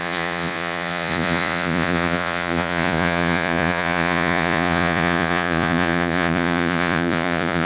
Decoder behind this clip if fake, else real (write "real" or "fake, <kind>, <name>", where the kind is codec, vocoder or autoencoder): fake, vocoder, Vocos